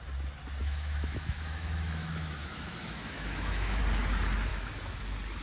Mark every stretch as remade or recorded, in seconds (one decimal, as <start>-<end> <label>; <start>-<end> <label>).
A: 0.0-0.6 recorded; 0.6-3.8 remade; 3.8-4.5 recorded; 4.5-5.0 remade; 5.0-5.4 recorded